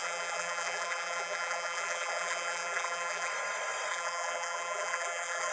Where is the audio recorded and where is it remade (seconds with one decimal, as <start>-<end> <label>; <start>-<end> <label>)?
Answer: 0.0-3.3 remade; 3.3-3.9 recorded; 3.9-5.5 remade